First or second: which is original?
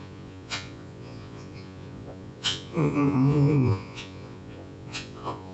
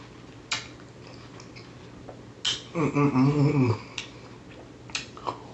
second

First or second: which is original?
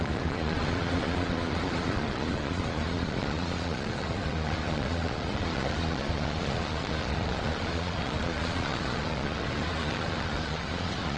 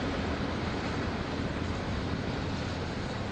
second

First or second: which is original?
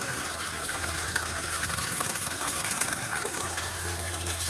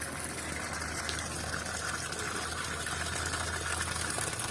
second